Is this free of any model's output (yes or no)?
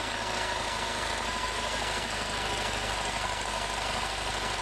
no